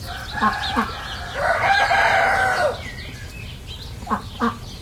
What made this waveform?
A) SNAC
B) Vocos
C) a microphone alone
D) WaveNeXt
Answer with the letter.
C